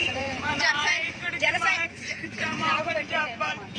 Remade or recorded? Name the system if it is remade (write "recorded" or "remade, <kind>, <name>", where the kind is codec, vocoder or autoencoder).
remade, vocoder, Vocos